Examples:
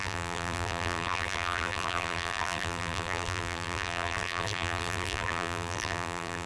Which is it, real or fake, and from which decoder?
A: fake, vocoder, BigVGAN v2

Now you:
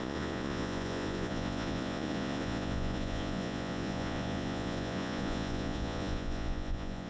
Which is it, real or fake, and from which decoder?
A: fake, vocoder, Vocos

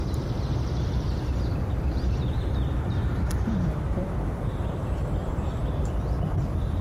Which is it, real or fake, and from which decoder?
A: fake, vocoder, BigVGAN v2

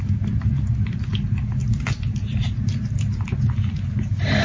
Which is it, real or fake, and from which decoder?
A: fake, vocoder, BigVGAN v2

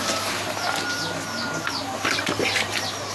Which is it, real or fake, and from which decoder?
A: real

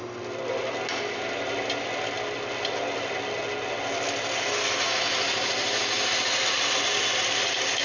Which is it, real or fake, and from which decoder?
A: real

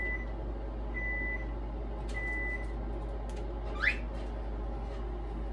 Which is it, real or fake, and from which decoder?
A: real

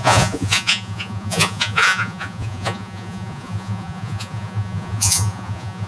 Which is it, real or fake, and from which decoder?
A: fake, vocoder, Vocos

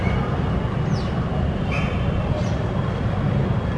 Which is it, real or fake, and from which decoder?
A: real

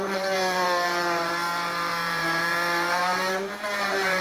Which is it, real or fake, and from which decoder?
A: fake, vocoder, BigVGAN v2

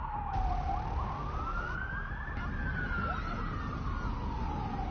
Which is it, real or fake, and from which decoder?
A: real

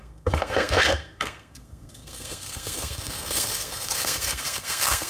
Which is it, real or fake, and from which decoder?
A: fake, codec, SNAC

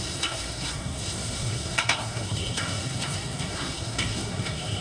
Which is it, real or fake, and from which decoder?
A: fake, codec, SNAC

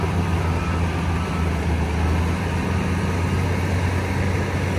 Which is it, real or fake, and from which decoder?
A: real